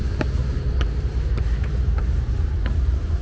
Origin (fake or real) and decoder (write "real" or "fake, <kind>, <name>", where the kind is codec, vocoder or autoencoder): fake, vocoder, BigVGAN v2